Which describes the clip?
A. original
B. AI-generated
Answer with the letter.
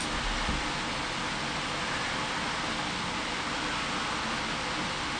A